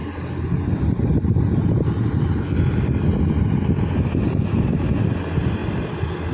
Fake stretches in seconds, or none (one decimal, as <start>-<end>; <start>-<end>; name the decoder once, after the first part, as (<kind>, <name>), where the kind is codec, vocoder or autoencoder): 5.6-6.3 (vocoder, BigVGAN v2)